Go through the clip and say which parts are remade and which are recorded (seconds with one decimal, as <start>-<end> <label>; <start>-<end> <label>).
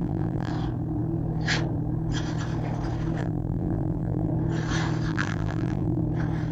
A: 0.0-0.5 remade; 0.5-3.2 recorded; 3.2-4.3 remade; 4.3-5.1 recorded; 5.1-6.0 remade; 6.0-6.5 recorded